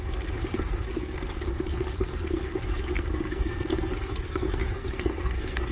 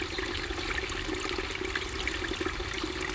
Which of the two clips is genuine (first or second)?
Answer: second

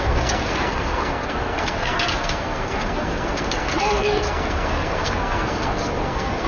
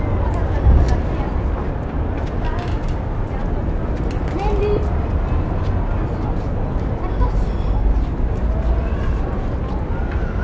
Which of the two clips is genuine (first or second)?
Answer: second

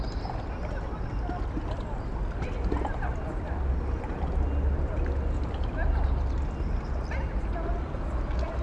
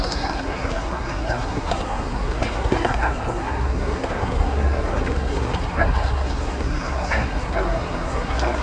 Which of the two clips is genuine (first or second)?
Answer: first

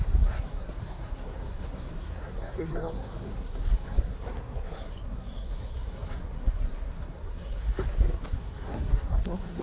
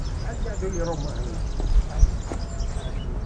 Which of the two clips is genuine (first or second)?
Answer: second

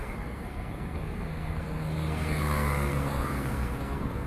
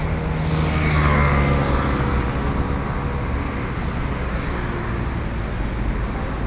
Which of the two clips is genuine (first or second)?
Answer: second